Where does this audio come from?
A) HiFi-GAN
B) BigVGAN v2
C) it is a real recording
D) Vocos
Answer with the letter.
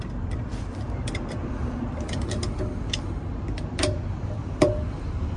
B